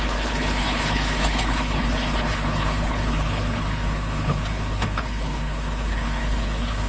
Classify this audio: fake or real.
fake